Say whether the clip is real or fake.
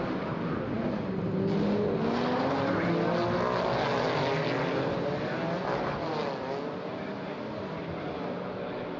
real